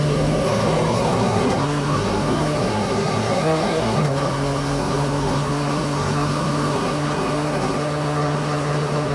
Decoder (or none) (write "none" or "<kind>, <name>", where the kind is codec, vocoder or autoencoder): codec, SNAC